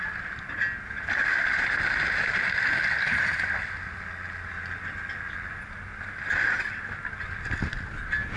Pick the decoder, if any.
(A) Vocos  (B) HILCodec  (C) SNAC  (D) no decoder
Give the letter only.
D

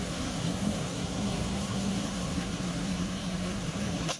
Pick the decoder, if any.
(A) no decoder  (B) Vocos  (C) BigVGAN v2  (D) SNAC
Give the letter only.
D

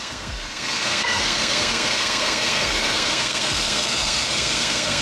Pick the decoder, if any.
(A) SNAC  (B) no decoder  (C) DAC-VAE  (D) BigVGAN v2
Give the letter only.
A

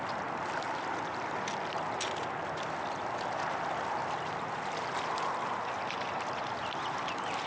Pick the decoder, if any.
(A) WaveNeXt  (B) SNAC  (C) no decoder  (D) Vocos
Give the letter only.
C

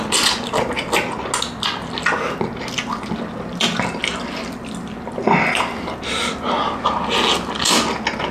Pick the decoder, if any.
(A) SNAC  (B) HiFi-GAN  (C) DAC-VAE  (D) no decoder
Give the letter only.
D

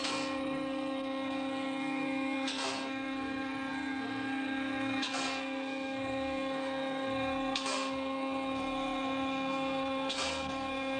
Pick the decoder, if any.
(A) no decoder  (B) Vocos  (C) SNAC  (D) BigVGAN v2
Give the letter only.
C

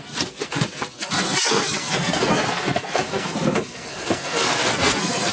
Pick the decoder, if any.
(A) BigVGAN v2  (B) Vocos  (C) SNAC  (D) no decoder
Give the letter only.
C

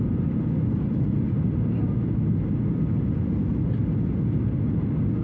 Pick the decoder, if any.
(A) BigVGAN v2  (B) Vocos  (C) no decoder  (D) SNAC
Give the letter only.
C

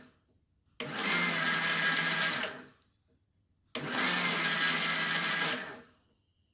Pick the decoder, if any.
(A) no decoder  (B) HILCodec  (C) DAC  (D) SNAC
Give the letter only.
A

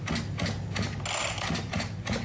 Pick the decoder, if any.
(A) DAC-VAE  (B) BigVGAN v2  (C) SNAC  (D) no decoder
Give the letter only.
D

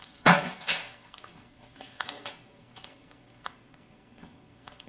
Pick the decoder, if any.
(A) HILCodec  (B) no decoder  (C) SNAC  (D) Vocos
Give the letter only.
C